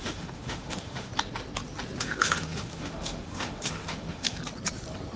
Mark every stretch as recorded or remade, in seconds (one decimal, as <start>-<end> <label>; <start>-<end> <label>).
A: 0.0-1.1 remade; 1.1-2.0 recorded; 2.0-4.4 remade; 4.4-5.2 recorded